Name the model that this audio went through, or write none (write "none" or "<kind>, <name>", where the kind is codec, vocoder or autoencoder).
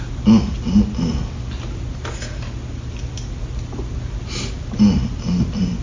none